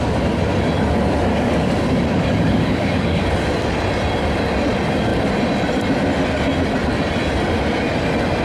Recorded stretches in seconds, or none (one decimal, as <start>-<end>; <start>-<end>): 0.0-1.3; 3.2-8.4